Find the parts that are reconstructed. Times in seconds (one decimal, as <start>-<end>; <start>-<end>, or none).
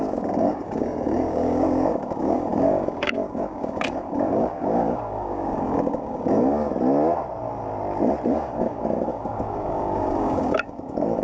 0.0-6.7; 8.3-11.2